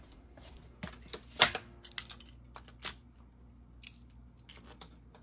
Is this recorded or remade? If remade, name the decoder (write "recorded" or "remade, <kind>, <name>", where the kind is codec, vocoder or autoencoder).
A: recorded